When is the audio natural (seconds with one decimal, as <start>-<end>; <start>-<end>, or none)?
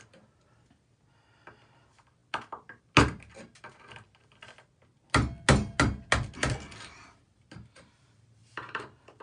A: 0.0-8.4